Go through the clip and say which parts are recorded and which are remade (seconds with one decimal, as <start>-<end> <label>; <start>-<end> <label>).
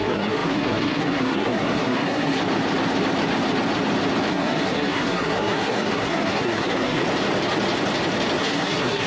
0.0-2.4 remade; 2.4-4.3 recorded; 4.3-7.0 remade; 7.0-8.4 recorded; 8.4-9.1 remade